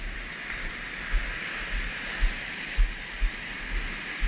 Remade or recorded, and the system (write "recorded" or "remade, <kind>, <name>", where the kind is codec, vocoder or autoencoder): recorded